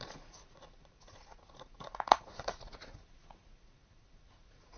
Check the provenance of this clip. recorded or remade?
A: remade